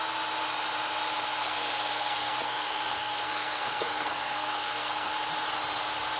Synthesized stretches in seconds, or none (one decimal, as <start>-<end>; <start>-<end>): 1.4-5.1